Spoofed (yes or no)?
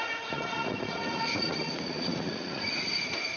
yes